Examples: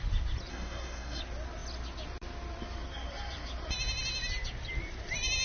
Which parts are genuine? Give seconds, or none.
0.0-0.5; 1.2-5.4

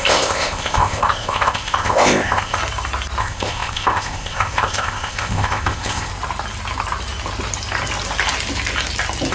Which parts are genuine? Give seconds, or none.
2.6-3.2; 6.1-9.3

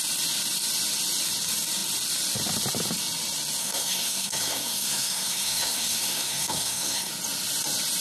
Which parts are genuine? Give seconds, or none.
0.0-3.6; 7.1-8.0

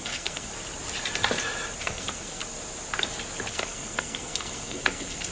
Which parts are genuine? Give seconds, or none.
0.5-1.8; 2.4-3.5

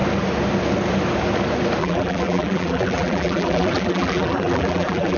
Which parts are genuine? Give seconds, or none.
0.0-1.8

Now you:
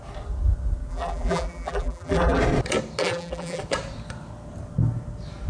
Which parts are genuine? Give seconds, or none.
0.0-0.9; 2.4-3.0; 3.6-5.5